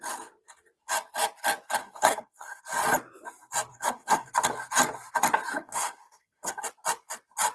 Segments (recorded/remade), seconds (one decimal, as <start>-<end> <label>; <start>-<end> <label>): 0.0-1.8 recorded; 1.8-2.6 remade; 2.6-3.7 recorded; 3.7-4.3 remade; 4.3-5.5 recorded; 5.5-6.6 remade; 6.6-7.5 recorded